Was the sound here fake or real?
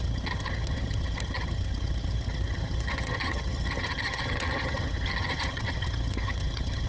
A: fake